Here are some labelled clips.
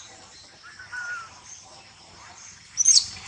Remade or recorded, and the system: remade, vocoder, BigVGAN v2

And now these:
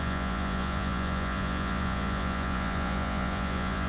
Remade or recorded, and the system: remade, vocoder, Vocos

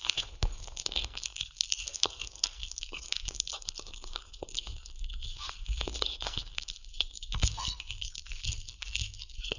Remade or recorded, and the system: remade, codec, SNAC